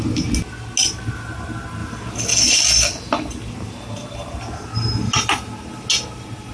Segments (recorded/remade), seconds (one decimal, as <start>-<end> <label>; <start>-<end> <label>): 0.0-4.0 recorded; 4.0-5.1 remade; 5.1-6.5 recorded